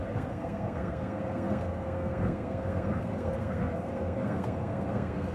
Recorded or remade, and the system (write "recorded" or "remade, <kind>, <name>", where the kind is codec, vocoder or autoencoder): remade, codec, SNAC